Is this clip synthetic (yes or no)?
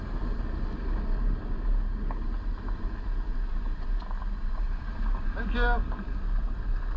no